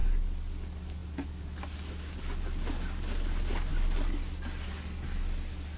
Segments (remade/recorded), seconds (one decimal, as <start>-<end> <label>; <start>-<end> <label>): 0.0-5.8 recorded